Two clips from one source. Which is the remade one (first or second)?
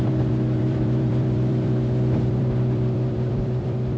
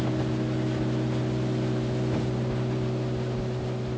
first